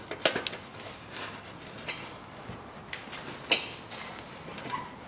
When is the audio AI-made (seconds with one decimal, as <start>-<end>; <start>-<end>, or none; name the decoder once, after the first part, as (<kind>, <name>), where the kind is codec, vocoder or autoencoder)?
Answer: none